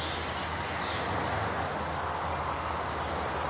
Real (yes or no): yes